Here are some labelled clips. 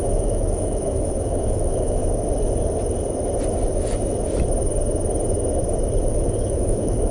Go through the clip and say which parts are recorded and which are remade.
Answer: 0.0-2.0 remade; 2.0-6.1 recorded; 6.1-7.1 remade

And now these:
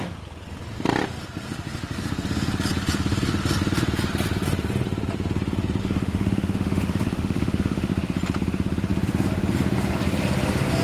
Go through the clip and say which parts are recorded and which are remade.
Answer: 0.0-5.8 recorded; 5.8-7.9 remade; 7.9-10.8 recorded

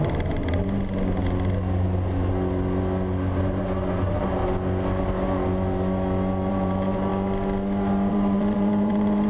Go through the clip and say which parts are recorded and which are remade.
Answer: 0.0-0.4 remade; 0.4-3.4 recorded; 3.4-4.4 remade; 4.4-6.5 recorded; 6.5-7.1 remade; 7.1-8.1 recorded; 8.1-9.3 remade

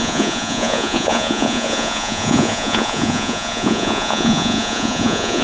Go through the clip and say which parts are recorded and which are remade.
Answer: 0.0-5.4 remade